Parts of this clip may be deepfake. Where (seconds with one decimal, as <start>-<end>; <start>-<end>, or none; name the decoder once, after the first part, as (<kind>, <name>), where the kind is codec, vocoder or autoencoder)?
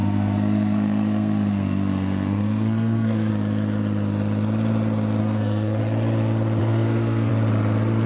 0.0-3.3 (codec, SNAC); 5.2-5.8; 6.6-7.3